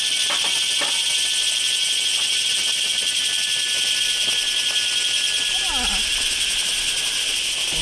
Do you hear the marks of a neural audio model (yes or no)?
no